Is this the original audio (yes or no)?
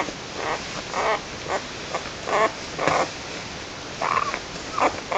yes